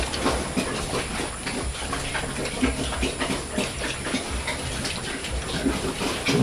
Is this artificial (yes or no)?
no